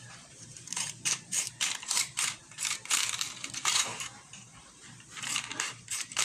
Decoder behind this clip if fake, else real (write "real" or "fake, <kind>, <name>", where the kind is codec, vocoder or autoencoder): fake, vocoder, BigVGAN v2